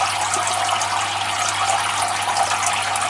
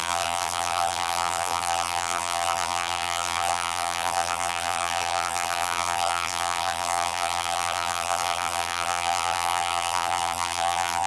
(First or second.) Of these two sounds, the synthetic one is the second